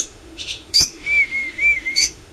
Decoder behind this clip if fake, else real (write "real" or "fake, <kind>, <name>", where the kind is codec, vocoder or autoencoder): fake, autoencoder, DAC-VAE